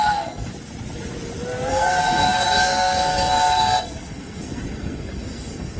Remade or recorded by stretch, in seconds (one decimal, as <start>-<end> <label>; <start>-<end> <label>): 0.0-0.5 remade; 0.5-1.7 recorded; 1.7-5.8 remade